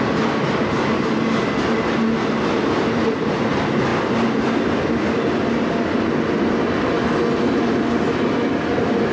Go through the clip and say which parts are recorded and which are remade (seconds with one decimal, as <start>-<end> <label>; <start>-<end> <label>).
0.0-9.1 recorded